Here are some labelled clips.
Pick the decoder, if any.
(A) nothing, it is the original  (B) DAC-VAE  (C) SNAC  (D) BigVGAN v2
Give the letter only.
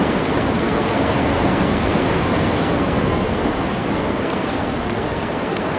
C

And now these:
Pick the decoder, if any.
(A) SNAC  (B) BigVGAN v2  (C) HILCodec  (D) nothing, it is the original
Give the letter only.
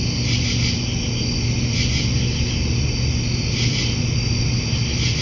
D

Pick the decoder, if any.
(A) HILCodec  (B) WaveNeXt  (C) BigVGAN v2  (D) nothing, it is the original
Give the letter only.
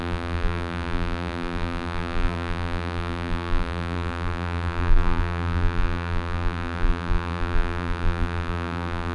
C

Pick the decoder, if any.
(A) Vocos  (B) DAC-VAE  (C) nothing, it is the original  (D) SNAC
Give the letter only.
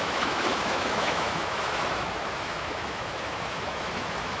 B